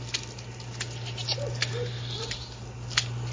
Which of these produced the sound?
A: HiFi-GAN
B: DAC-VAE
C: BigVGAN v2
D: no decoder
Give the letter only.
D